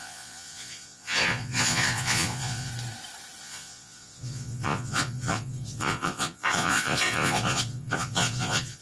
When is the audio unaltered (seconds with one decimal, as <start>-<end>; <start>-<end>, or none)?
2.7-3.4